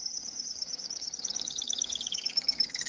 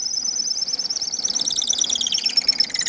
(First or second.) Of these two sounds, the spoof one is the first